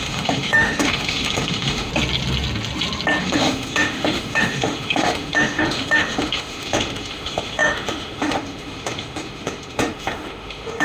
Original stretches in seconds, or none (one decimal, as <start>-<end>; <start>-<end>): 1.9-3.2